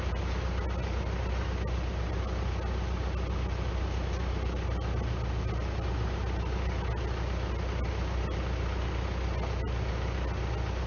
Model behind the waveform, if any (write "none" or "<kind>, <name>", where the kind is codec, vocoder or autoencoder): none